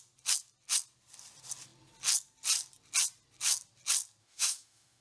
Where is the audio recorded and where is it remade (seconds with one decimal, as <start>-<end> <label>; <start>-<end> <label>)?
0.0-4.2 recorded; 4.2-5.0 remade